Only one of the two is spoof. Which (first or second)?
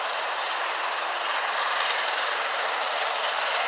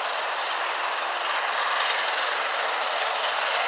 first